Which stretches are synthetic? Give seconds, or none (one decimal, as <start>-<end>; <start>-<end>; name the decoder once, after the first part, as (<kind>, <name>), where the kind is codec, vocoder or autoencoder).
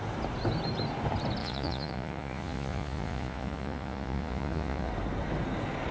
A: 1.4-4.9 (vocoder, Vocos)